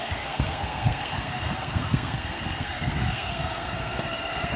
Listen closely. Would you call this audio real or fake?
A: fake